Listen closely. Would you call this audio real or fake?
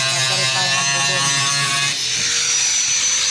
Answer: real